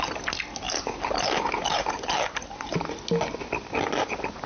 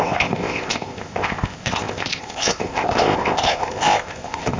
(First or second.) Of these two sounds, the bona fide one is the first